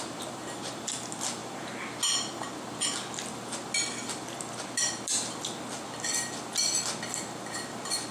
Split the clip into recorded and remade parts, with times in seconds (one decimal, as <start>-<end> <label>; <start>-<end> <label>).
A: 0.0-8.1 recorded